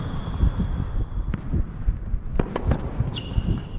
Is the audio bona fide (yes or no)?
yes